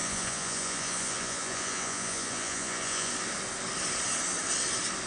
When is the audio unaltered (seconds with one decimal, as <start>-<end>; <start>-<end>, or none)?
3.1-5.1